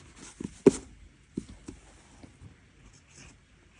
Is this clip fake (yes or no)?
no